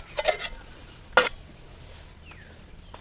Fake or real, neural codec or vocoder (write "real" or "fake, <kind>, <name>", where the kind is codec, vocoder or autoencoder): real